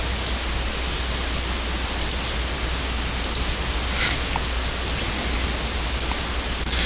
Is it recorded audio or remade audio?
recorded